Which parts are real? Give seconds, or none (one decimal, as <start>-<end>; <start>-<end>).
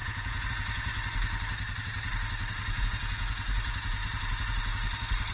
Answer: 0.9-2.8; 4.0-5.3